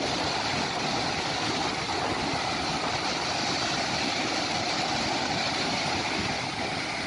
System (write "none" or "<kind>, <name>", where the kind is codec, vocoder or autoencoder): none